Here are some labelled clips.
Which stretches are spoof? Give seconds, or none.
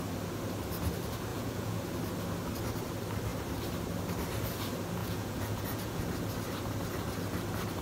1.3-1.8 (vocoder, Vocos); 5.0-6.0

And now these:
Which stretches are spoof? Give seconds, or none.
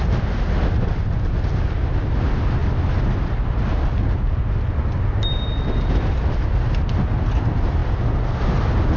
none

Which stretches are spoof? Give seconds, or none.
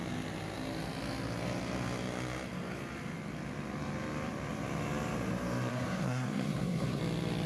5.7-7.0 (codec, SNAC)